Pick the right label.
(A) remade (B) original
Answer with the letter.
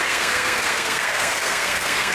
A